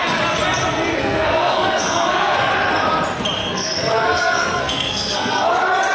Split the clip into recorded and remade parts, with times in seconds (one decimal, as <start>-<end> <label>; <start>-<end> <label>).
0.0-1.0 recorded; 1.0-2.5 remade; 2.5-3.4 recorded; 3.4-5.5 remade; 5.5-5.9 recorded

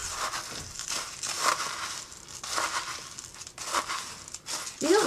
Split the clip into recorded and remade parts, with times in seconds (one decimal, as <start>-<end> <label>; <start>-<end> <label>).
0.0-5.1 recorded

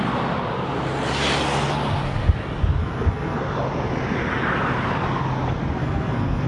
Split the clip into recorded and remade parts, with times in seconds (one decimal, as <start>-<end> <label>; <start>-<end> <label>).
0.0-2.8 recorded; 2.8-3.4 remade; 3.4-5.8 recorded; 5.8-6.5 remade

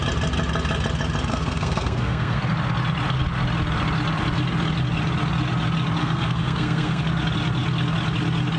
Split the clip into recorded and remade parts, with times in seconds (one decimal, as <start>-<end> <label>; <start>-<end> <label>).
0.0-1.3 recorded; 1.3-2.4 remade; 2.4-6.0 recorded; 6.0-7.0 remade; 7.0-8.6 recorded

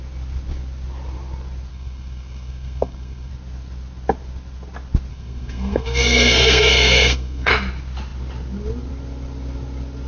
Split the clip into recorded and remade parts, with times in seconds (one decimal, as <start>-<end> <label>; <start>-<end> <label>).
0.0-1.7 recorded; 1.7-3.3 remade; 3.3-5.1 recorded; 5.1-7.5 remade; 7.5-10.1 recorded

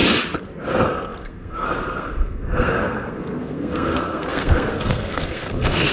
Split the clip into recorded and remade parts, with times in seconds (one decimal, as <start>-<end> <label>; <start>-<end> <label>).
0.0-0.7 recorded; 0.7-5.9 remade

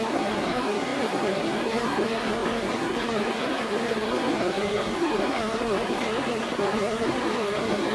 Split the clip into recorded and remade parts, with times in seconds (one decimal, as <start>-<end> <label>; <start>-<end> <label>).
0.0-7.9 remade

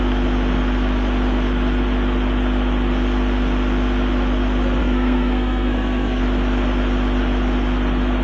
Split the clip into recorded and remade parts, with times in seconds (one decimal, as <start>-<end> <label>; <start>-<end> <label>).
0.0-4.8 recorded; 4.8-6.2 remade; 6.2-8.2 recorded